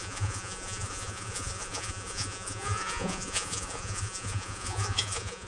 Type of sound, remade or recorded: remade